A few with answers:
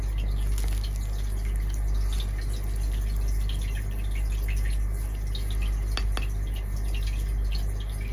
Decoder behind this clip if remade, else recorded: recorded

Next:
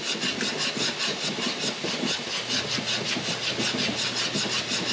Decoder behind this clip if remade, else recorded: recorded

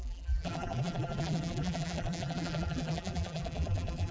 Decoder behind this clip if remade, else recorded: remade, vocoder, BigVGAN v2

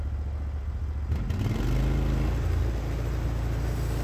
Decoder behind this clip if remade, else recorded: recorded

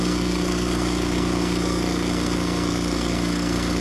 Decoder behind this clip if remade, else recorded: remade, codec, SNAC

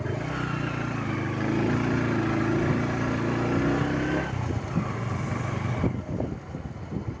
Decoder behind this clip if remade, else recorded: recorded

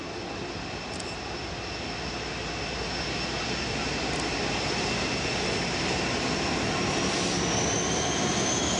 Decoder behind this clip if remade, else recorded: recorded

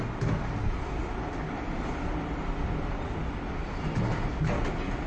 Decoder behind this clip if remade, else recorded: recorded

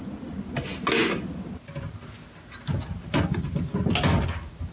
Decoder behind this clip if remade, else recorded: recorded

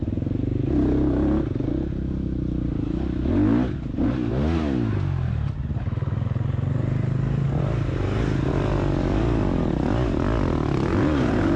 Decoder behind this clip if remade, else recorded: recorded